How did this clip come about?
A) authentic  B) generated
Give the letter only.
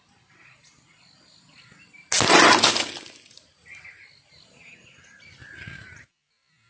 A